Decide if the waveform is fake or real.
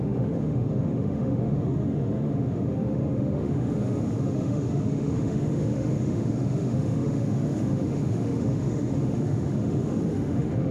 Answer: fake